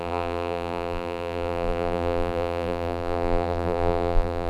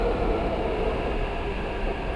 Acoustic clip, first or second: second